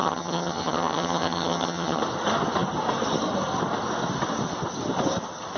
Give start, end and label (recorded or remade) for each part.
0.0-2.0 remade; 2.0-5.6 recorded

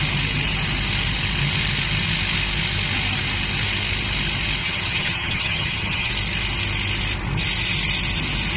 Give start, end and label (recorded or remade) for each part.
0.0-4.6 recorded; 4.6-6.1 remade; 6.1-8.6 recorded